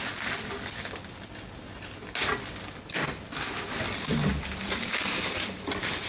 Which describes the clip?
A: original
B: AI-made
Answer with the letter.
A